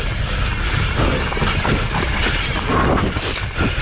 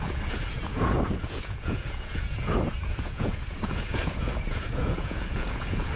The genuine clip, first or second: first